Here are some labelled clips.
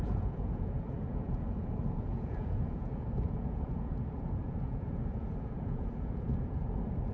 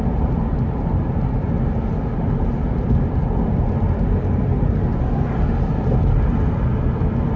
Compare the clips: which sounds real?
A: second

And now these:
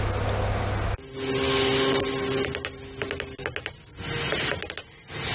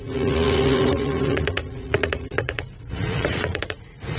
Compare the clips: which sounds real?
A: first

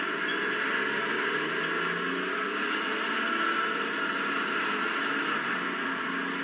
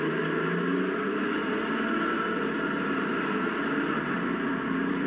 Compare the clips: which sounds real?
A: first